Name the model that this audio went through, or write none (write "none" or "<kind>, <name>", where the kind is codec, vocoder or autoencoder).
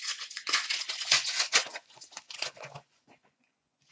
vocoder, Vocos